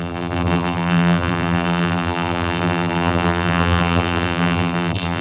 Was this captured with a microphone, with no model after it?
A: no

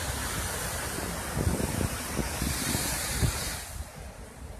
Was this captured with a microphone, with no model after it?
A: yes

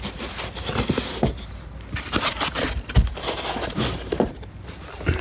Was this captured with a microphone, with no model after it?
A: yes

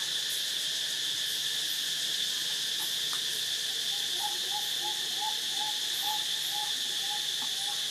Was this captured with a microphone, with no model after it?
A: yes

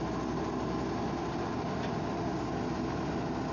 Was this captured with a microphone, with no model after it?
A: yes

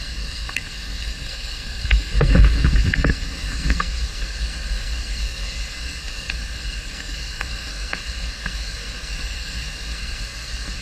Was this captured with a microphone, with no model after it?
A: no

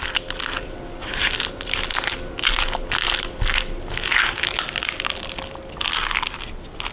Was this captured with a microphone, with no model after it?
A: yes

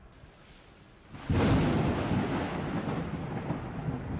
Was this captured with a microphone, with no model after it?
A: yes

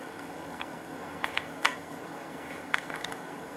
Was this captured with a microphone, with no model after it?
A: no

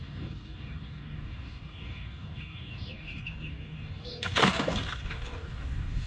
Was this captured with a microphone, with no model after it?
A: no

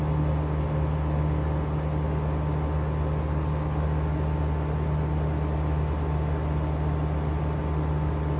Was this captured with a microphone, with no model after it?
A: yes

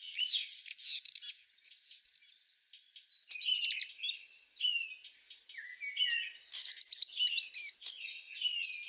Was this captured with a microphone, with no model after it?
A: yes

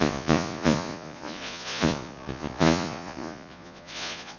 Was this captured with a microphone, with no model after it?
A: no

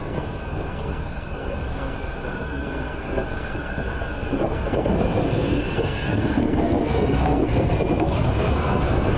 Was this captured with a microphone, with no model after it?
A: no